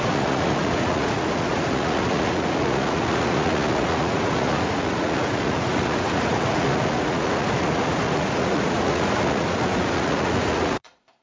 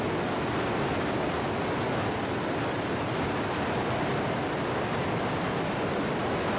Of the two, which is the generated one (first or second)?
first